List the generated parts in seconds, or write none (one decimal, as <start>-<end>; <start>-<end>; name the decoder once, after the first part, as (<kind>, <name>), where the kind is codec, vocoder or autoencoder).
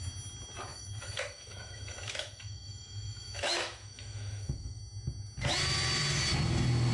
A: 0.7-4.8 (autoencoder, DAC-VAE)